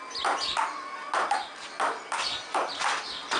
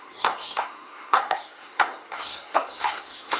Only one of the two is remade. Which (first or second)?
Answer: second